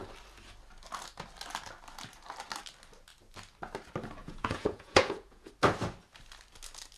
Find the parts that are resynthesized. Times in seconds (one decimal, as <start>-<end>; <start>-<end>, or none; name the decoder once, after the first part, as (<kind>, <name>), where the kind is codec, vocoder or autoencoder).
4.2-5.5 (vocoder, Vocos)